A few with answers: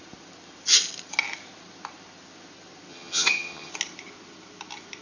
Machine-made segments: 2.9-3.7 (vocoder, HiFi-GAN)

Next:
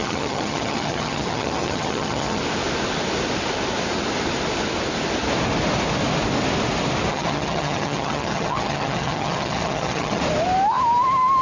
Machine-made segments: 0.0-2.4 (vocoder, HiFi-GAN); 7.1-10.2